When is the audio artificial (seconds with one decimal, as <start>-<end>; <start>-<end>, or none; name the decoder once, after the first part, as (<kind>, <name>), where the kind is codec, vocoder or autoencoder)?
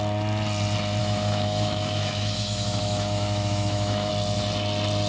1.0-4.1 (autoencoder, DAC-VAE)